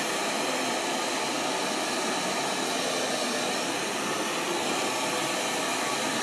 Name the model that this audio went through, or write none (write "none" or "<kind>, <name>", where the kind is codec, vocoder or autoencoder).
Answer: none